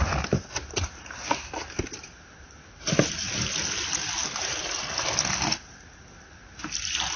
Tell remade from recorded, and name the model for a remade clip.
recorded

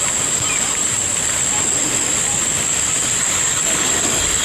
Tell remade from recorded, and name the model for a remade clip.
recorded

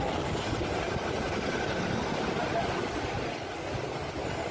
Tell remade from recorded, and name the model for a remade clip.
recorded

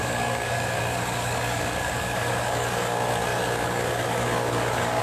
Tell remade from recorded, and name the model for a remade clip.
remade, codec, DAC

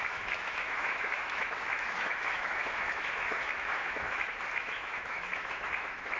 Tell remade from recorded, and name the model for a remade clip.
remade, autoencoder, DAC-VAE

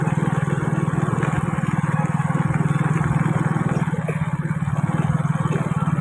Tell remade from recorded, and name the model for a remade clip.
recorded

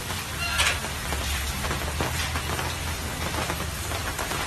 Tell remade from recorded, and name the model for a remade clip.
recorded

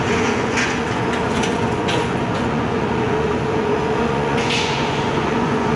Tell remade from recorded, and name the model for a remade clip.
remade, vocoder, Vocos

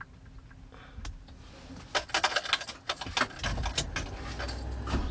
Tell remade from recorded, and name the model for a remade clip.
recorded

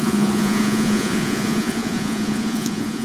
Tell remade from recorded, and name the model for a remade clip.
remade, vocoder, Vocos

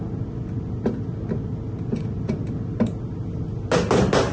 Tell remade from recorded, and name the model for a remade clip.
recorded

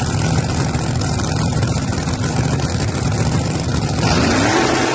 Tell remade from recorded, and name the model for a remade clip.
remade, vocoder, BigVGAN v2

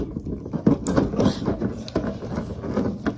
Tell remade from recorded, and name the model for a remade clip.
recorded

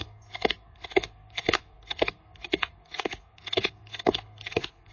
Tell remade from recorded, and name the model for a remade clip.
remade, codec, SNAC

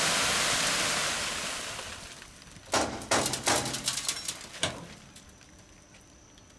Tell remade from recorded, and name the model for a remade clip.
recorded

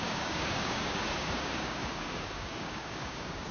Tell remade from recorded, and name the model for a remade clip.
remade, codec, DAC